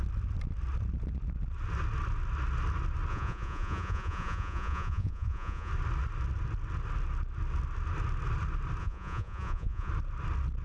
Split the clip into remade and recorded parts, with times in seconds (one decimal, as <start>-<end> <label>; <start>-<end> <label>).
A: 0.0-3.1 recorded; 3.1-5.7 remade; 5.7-8.8 recorded; 8.8-9.9 remade; 9.9-10.6 recorded